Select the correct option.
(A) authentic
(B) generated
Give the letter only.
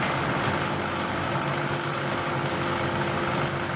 A